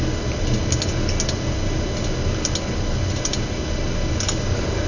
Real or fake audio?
real